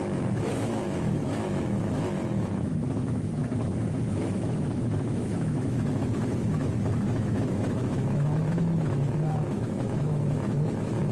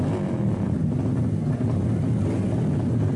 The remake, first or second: first